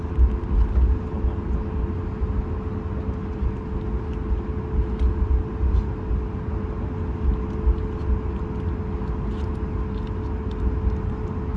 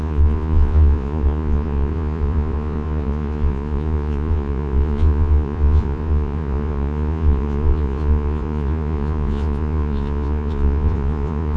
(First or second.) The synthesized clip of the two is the second